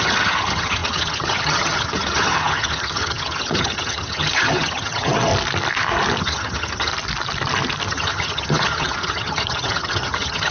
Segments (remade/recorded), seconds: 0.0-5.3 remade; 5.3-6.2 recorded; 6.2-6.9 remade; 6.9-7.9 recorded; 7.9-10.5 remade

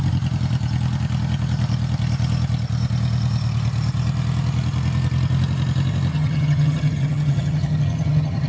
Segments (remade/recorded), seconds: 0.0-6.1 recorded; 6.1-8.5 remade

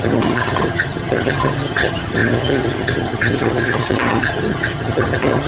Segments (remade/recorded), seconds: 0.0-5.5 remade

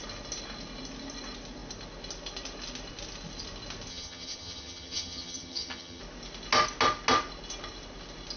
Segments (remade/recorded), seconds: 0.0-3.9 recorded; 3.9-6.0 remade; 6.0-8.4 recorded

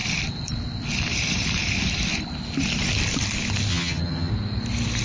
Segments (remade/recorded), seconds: 0.0-3.7 recorded; 3.7-4.3 remade; 4.3-5.0 recorded